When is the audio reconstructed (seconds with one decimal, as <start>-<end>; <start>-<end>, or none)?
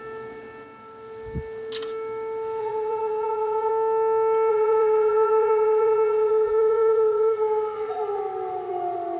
2.6-3.7; 4.5-8.2